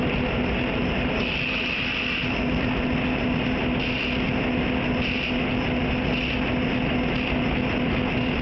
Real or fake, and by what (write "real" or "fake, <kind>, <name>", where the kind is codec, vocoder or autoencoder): real